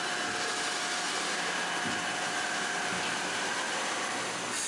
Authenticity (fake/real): real